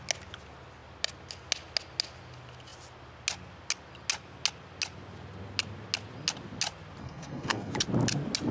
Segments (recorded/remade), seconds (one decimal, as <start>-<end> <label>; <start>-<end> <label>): 0.0-7.0 recorded; 7.0-7.7 remade; 7.7-8.5 recorded